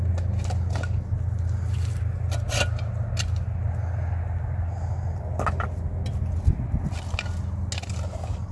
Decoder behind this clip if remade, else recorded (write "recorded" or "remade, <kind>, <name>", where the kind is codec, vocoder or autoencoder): recorded